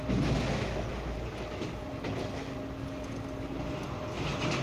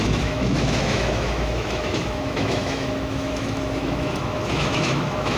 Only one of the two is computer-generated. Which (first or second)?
second